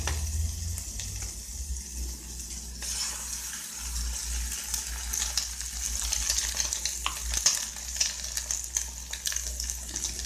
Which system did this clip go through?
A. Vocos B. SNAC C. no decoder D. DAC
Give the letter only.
C